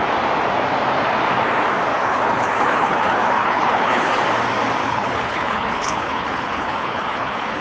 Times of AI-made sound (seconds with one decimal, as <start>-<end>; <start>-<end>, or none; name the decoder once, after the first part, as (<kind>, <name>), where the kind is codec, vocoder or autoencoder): 1.9-4.2 (codec, HILCodec); 4.8-7.6